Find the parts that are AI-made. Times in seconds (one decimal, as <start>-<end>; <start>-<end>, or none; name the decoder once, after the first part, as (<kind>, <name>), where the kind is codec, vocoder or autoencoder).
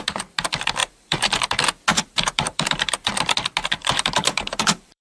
0.8-1.3 (vocoder, BigVGAN v2); 1.9-3.1; 3.8-5.0